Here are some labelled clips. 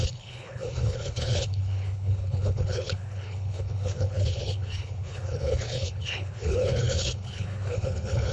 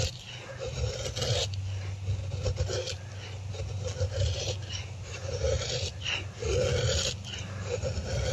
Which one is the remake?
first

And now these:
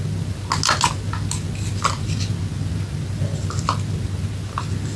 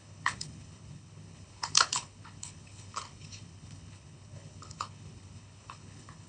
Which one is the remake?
second